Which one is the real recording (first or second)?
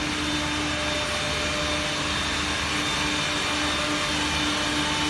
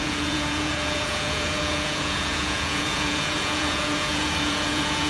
first